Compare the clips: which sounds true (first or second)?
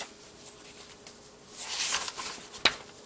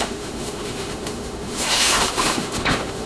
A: first